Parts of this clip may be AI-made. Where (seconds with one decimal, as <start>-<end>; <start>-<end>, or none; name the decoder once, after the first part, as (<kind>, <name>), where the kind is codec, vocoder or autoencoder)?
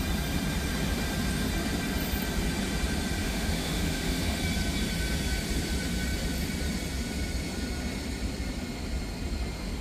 3.2-4.4 (autoencoder, DAC-VAE)